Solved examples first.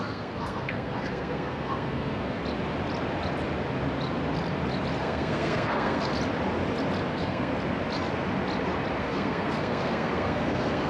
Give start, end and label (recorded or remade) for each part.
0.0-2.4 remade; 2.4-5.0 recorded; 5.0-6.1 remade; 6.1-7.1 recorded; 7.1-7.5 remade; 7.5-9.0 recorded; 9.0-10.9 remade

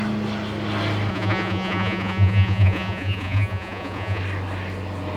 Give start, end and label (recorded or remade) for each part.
0.0-1.1 recorded; 1.1-4.2 remade; 4.2-5.2 recorded